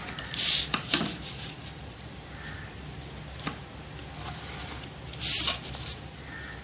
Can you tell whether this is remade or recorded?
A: remade